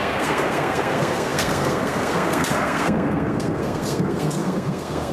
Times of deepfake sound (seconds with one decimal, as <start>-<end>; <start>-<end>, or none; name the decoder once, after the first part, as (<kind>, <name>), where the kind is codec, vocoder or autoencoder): 0.0-5.1 (codec, SNAC)